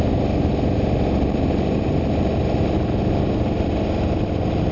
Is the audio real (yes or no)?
yes